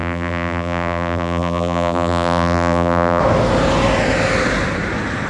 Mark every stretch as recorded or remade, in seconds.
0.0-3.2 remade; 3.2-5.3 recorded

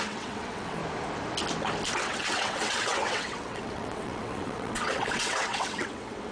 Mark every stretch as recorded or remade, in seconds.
0.0-0.8 remade; 0.8-2.0 recorded; 2.0-6.3 remade

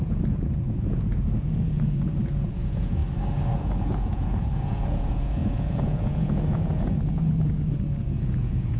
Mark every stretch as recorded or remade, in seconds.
0.0-3.0 remade; 3.0-3.6 recorded; 3.6-8.8 remade

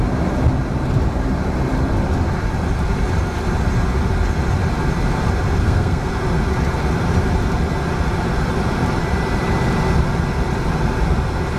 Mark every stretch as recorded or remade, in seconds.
0.0-5.6 recorded; 5.6-6.1 remade; 6.1-11.6 recorded

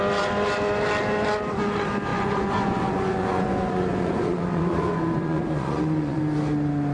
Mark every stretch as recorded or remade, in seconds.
0.0-2.1 recorded; 2.1-6.2 remade; 6.2-6.9 recorded

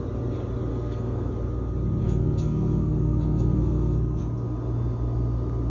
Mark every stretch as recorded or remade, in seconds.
0.0-0.7 recorded; 0.7-1.3 remade; 1.3-2.0 recorded; 2.0-4.2 remade; 4.2-5.7 recorded

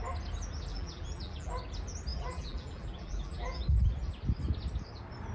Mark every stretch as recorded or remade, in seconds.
0.0-0.7 recorded; 0.7-1.6 remade; 1.6-2.1 recorded; 2.1-3.6 remade; 3.6-5.3 recorded